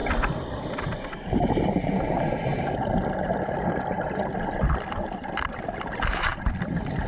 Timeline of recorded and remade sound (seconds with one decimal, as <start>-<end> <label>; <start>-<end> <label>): 0.0-7.1 recorded